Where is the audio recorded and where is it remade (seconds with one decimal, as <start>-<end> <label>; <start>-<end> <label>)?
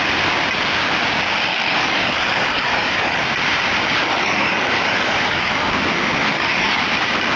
0.0-1.5 recorded; 1.5-3.2 remade; 3.2-4.1 recorded; 4.1-5.5 remade; 5.5-6.2 recorded; 6.2-6.9 remade; 6.9-7.4 recorded